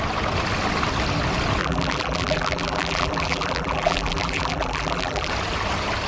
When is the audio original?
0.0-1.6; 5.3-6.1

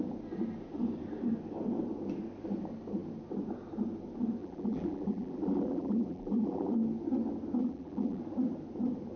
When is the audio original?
0.0-4.4; 6.7-7.6; 8.2-9.2

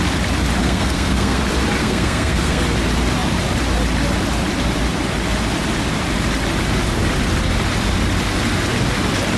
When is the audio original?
0.0-0.6; 1.4-1.8; 2.6-9.4

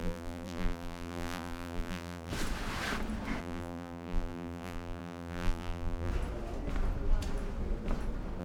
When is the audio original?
2.3-3.4; 6.1-8.4

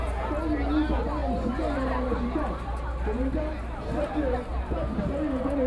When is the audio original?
0.0-5.7

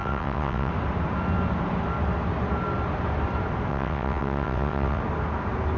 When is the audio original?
0.7-3.7; 5.0-5.8